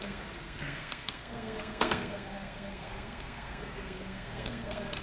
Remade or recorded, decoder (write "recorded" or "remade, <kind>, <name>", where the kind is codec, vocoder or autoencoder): remade, codec, SNAC